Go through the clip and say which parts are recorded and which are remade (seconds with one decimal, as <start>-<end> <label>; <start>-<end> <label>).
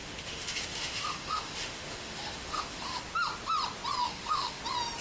0.0-3.0 remade; 3.0-4.0 recorded; 4.0-4.6 remade; 4.6-5.0 recorded